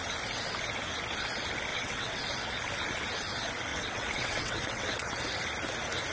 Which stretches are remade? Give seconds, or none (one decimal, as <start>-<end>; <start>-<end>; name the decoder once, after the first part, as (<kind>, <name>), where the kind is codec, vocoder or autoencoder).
1.7-2.2 (vocoder, WaveNeXt); 3.7-5.2